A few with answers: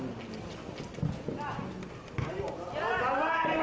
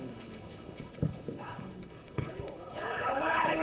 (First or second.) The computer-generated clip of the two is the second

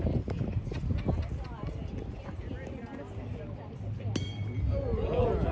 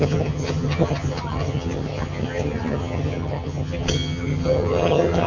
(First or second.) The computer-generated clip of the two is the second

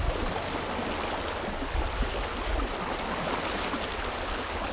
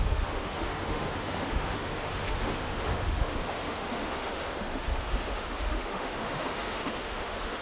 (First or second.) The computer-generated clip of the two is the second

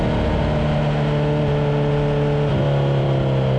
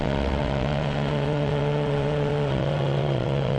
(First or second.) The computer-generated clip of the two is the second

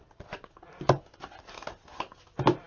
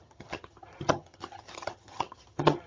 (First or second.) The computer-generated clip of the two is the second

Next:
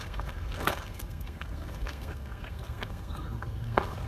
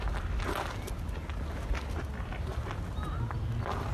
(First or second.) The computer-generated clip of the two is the first